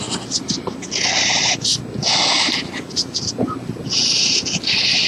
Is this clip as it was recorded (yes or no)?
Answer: yes